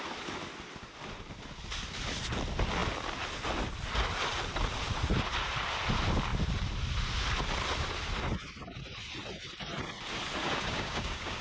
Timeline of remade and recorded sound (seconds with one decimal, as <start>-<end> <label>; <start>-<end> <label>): 0.0-10.4 recorded; 10.4-11.4 remade